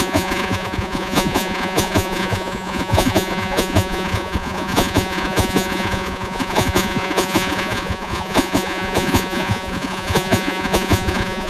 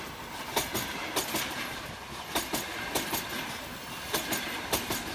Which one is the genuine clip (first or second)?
second